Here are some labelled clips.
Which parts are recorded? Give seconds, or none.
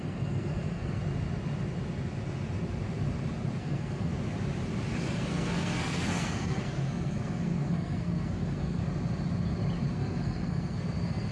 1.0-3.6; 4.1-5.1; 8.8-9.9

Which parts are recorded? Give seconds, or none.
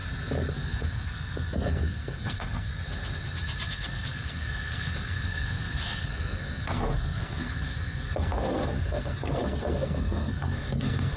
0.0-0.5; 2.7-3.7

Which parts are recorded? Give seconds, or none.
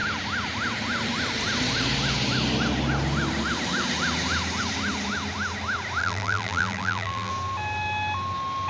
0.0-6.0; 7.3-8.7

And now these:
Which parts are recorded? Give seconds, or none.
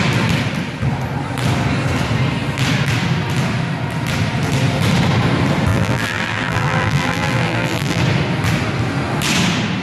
0.0-5.7; 8.0-9.8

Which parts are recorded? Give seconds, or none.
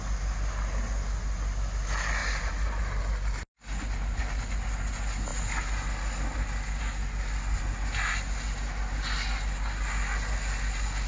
0.0-2.2; 3.0-11.1